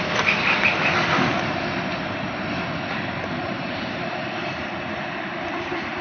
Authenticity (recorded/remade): remade